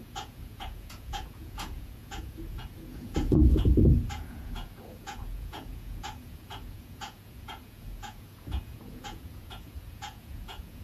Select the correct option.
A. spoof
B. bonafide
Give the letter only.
A